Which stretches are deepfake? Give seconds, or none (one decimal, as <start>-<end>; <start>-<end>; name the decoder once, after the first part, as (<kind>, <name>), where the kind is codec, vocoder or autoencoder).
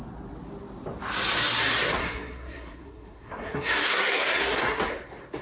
2.0-4.8 (codec, SNAC)